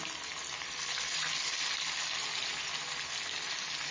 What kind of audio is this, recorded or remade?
recorded